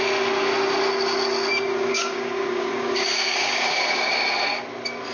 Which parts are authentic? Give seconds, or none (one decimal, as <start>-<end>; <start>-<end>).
0.0-1.5; 4.1-5.1